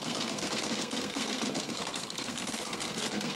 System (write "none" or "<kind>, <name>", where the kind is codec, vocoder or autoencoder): codec, SNAC